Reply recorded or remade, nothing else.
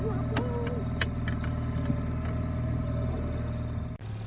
recorded